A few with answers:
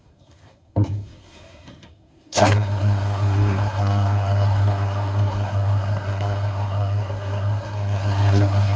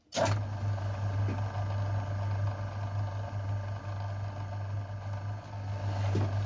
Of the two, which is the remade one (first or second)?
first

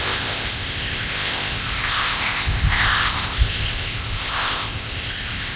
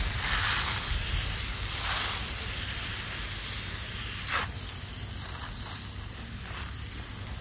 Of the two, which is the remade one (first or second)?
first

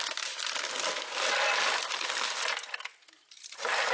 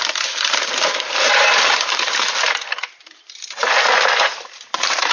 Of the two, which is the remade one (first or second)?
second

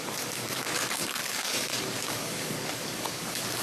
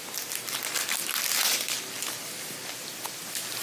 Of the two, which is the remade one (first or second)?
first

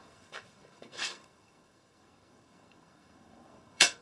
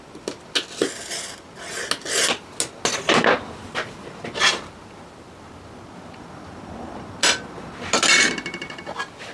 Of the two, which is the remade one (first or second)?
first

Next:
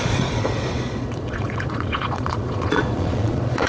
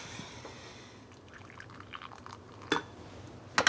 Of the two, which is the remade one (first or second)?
first